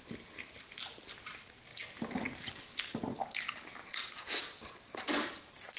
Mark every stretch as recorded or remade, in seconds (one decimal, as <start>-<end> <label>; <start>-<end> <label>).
0.0-1.7 remade; 1.7-2.5 recorded; 2.5-2.9 remade; 2.9-4.4 recorded; 4.4-5.8 remade